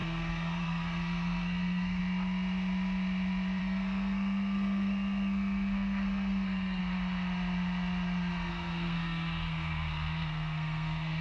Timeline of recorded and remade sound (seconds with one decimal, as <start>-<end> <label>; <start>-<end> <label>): 0.0-2.0 remade; 2.0-3.6 recorded; 3.6-6.8 remade; 6.8-8.5 recorded; 8.5-11.2 remade